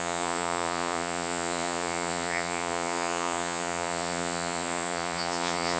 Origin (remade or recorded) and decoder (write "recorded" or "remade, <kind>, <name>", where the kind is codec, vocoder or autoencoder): remade, vocoder, Vocos